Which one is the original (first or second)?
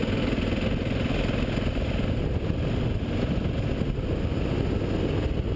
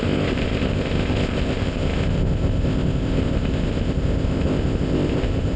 first